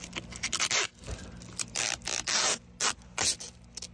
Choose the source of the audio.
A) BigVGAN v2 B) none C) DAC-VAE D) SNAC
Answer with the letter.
B